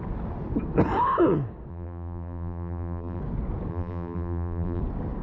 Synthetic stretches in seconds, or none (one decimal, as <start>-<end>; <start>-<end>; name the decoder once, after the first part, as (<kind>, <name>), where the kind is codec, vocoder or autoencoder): 1.7-3.2 (vocoder, BigVGAN v2); 3.7-4.8